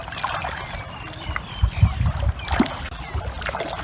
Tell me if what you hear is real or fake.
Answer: real